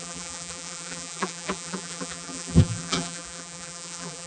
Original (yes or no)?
no